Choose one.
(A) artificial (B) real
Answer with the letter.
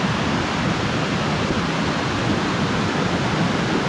B